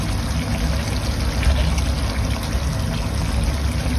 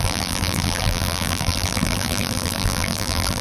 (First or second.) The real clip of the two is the first